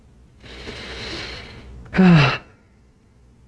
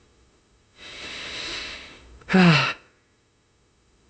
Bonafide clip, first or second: first